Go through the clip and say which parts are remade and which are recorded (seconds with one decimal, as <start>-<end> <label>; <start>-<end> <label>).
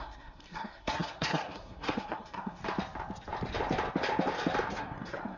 0.0-2.6 remade; 2.6-4.7 recorded; 4.7-5.4 remade